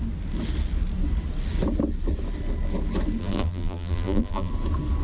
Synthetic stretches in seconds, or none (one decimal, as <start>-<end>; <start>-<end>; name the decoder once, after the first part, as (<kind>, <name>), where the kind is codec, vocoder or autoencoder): 3.2-4.5 (vocoder, BigVGAN v2)